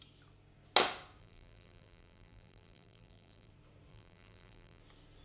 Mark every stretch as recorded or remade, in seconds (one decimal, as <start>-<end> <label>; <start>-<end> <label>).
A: 0.0-1.2 recorded; 1.2-3.5 remade; 3.5-3.9 recorded; 3.9-4.8 remade; 4.8-5.2 recorded